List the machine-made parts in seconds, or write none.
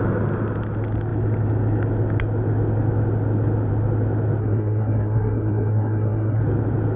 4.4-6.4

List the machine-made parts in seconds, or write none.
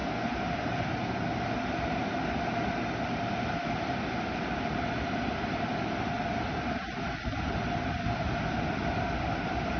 3.4-9.8